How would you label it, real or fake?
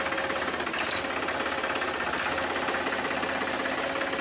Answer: real